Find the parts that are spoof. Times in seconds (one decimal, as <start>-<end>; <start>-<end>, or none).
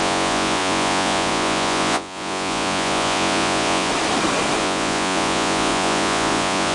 0.0-3.9; 4.6-6.7